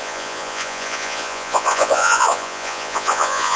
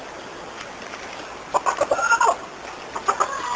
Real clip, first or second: second